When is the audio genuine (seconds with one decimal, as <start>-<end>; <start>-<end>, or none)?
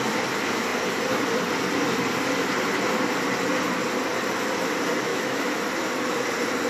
0.0-5.1; 5.6-6.7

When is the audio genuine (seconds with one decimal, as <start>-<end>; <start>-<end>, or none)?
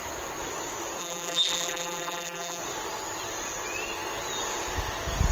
0.0-1.0; 2.6-5.3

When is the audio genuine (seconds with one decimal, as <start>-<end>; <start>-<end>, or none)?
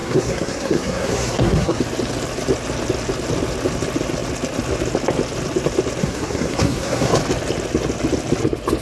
1.8-6.0; 7.1-8.8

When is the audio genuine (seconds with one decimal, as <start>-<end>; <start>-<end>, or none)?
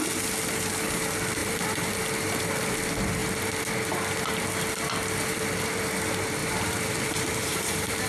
0.0-1.4; 2.0-6.4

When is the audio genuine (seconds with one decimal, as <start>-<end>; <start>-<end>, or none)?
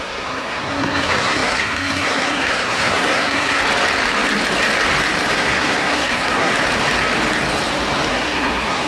3.6-5.3; 6.5-8.1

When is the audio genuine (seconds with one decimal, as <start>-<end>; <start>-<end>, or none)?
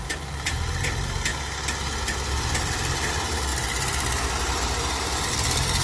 1.3-2.0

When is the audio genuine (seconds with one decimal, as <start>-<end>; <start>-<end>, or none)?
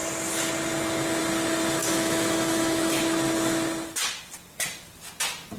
0.0-1.8; 3.0-5.6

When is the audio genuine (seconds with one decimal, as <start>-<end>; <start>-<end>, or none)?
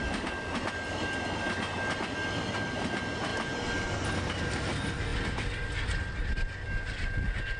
0.0-7.6